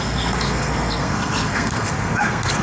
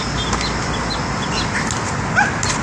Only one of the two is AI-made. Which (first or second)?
first